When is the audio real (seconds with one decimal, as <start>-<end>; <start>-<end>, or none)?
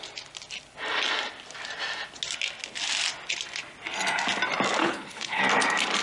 0.0-4.8; 5.4-6.0